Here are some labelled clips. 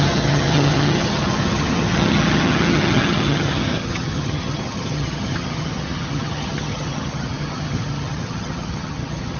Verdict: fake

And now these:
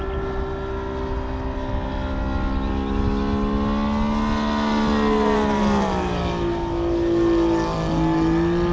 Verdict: real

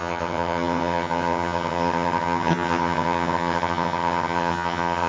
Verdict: fake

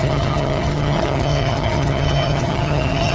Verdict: fake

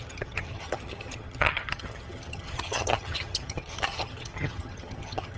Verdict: fake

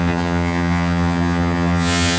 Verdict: fake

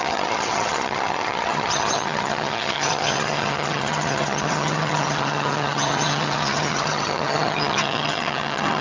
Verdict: fake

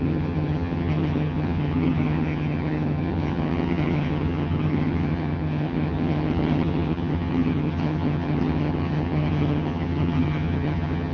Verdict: fake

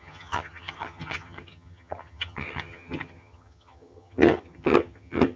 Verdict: fake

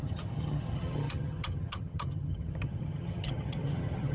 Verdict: fake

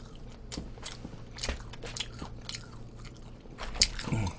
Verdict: real